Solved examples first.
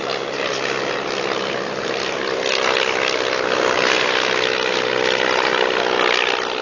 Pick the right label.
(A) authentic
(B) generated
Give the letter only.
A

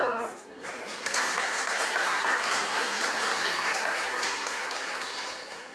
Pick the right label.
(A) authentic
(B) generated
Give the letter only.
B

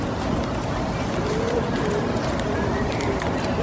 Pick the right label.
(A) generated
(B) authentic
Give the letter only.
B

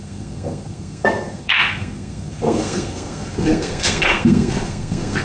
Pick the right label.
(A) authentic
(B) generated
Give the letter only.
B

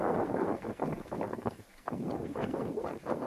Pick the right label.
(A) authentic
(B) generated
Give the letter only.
B